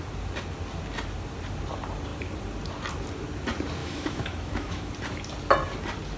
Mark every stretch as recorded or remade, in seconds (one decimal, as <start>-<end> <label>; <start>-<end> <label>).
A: 0.0-3.8 recorded; 3.8-4.9 remade; 4.9-6.2 recorded